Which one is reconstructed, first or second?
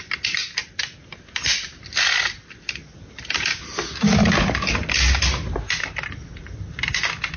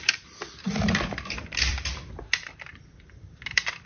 second